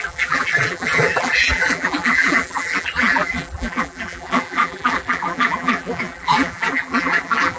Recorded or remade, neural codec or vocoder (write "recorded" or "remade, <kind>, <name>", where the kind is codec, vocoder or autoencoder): remade, vocoder, BigVGAN v2